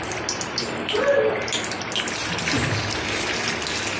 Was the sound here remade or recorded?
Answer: recorded